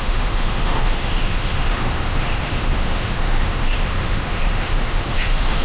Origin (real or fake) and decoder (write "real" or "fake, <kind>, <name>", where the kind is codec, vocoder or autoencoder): fake, autoencoder, DAC-VAE